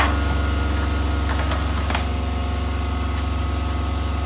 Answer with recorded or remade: recorded